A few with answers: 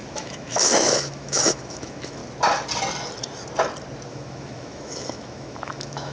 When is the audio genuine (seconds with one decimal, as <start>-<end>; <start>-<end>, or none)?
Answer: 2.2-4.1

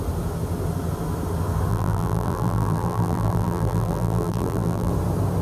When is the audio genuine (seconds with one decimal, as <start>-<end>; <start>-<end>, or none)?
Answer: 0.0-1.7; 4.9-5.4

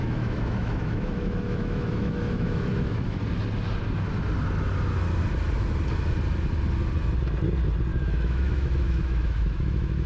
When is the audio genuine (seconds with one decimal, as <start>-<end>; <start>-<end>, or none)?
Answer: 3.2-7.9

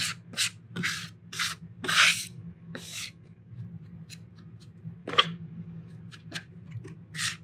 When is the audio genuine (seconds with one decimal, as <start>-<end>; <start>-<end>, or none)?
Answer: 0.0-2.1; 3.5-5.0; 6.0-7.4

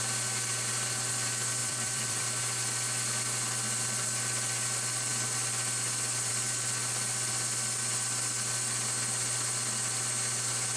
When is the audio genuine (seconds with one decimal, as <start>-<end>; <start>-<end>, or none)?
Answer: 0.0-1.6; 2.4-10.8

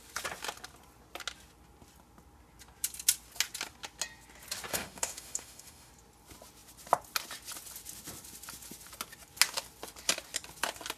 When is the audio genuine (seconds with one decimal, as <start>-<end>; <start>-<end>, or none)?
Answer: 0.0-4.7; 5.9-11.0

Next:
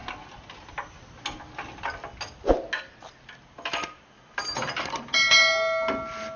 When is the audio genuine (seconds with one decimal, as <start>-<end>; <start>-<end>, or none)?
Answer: 0.0-6.4

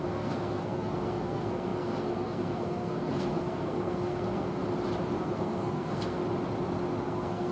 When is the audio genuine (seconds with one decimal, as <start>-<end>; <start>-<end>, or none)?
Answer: 4.6-5.2; 6.2-7.0